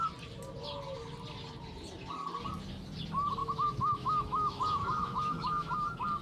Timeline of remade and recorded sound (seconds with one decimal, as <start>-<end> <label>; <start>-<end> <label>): 0.0-3.4 recorded; 3.4-5.7 remade; 5.7-6.2 recorded